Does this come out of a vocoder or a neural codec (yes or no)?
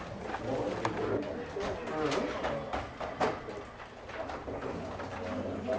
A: no